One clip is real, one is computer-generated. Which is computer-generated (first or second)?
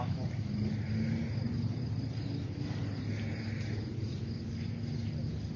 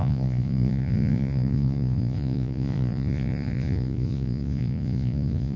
second